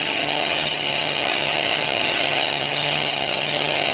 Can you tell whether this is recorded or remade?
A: remade